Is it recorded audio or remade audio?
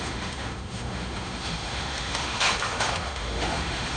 remade